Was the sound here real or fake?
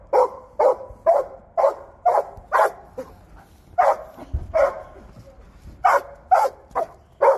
real